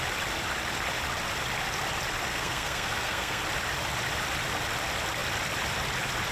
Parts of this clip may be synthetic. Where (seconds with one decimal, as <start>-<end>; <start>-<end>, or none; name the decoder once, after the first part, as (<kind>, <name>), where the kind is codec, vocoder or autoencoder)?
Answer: 2.3-3.4 (codec, SNAC)